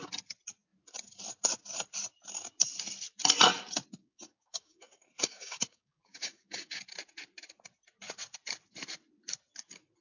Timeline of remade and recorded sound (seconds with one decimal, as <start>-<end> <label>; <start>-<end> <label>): 0.0-4.0 recorded; 4.0-6.8 remade; 6.8-10.0 recorded